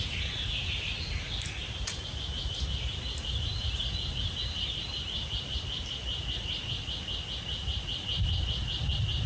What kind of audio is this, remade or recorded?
recorded